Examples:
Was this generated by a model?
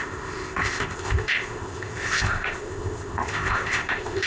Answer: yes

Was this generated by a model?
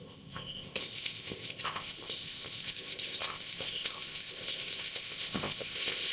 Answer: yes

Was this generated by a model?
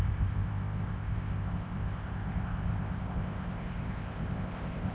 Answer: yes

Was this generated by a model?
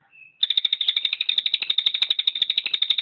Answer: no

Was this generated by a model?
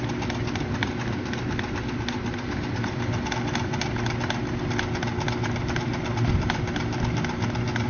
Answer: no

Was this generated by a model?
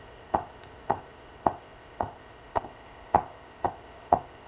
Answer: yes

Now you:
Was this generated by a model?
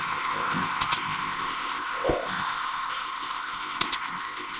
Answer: yes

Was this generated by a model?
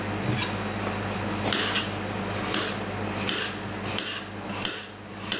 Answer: no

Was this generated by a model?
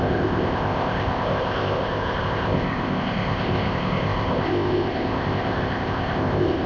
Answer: yes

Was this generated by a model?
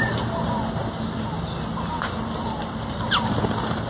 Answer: no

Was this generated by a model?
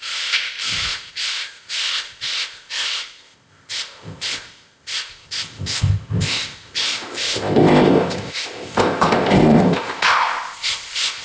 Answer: yes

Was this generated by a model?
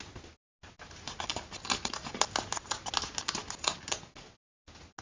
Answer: no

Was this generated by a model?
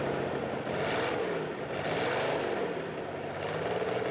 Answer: no